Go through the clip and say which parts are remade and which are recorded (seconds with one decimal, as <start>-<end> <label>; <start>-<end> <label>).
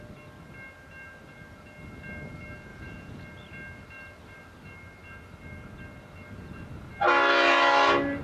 0.0-2.7 recorded; 2.7-3.2 remade; 3.2-8.2 recorded